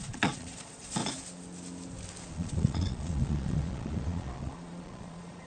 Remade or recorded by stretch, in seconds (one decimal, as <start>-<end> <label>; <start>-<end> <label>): 0.0-1.0 remade; 1.0-2.3 recorded; 2.3-5.5 remade